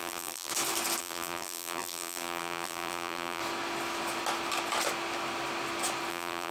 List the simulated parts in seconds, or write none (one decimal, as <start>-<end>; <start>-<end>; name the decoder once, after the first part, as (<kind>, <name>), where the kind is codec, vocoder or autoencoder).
0.0-0.5 (vocoder, BigVGAN v2); 1.0-3.4; 6.1-6.5